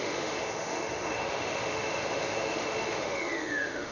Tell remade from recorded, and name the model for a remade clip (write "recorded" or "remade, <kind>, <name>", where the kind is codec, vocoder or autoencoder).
remade, autoencoder, DAC-VAE